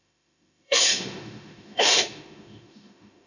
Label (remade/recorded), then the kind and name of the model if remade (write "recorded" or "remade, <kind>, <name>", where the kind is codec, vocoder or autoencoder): remade, autoencoder, DAC-VAE